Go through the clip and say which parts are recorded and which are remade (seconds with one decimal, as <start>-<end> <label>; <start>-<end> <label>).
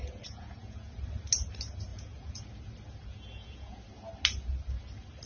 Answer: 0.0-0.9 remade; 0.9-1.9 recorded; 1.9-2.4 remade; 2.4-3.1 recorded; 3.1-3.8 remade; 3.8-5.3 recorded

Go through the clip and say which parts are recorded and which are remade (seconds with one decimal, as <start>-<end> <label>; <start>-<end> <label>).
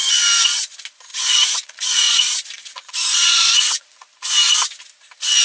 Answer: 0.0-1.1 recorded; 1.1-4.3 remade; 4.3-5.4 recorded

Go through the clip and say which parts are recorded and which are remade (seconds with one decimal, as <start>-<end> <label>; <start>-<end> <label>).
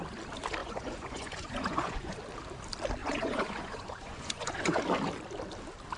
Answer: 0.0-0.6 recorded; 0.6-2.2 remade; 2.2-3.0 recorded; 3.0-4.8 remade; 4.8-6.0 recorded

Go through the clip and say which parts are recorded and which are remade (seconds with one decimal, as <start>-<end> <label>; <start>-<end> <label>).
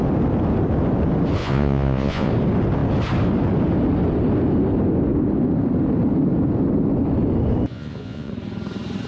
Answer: 0.0-1.4 recorded; 1.4-2.3 remade; 2.3-7.7 recorded; 7.7-8.3 remade; 8.3-9.1 recorded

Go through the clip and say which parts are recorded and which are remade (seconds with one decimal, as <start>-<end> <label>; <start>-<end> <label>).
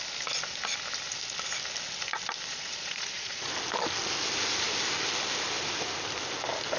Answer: 0.0-2.5 recorded; 2.5-3.5 remade; 3.5-6.8 recorded